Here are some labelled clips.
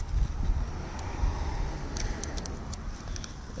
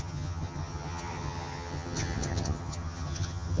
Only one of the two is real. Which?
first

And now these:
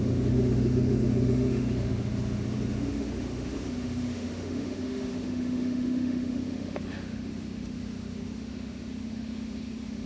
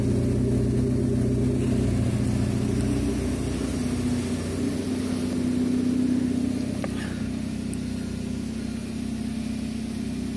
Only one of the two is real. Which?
second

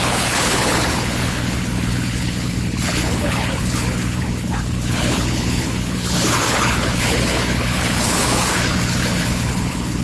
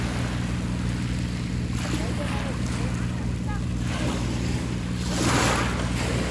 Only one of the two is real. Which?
second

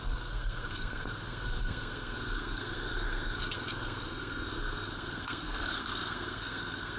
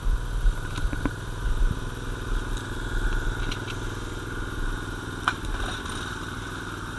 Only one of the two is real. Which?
second